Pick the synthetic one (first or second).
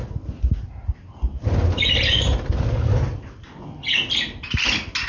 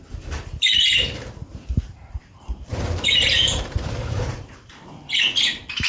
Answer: second